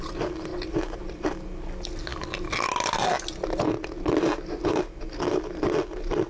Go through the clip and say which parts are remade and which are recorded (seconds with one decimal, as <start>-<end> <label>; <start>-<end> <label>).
0.0-6.3 recorded